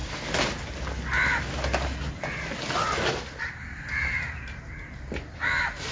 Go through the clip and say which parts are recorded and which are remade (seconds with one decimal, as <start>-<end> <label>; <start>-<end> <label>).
0.0-5.9 recorded